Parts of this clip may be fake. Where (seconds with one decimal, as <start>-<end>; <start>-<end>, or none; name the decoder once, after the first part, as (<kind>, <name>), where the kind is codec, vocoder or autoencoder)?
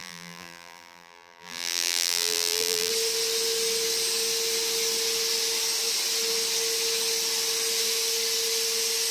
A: 0.0-2.9 (vocoder, BigVGAN v2)